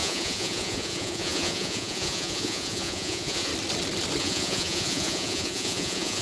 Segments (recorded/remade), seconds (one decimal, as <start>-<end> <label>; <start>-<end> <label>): 0.0-3.5 remade; 3.5-4.2 recorded; 4.2-6.2 remade